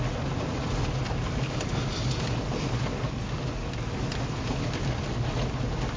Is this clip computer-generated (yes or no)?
no